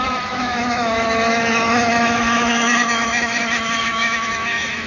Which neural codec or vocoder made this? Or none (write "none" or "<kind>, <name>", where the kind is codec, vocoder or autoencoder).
autoencoder, DAC-VAE